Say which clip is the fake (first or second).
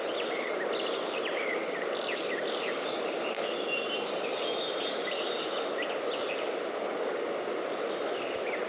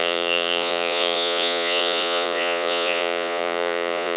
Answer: second